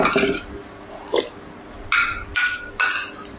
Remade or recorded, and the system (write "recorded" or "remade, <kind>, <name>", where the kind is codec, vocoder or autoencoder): recorded